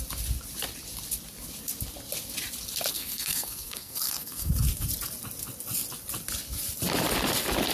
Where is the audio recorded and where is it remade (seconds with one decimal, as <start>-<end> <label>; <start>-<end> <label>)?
0.0-2.9 recorded; 2.9-4.5 remade; 4.5-7.7 recorded